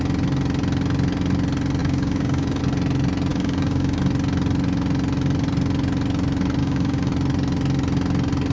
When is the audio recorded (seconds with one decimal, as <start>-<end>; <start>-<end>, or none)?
0.0-1.8; 2.6-3.3; 4.0-6.6; 7.1-8.5